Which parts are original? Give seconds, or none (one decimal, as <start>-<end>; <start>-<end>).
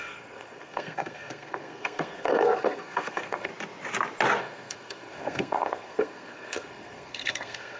3.5-4.4